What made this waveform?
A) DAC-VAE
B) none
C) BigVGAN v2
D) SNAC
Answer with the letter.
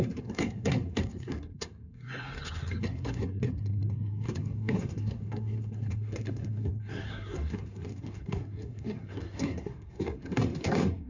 D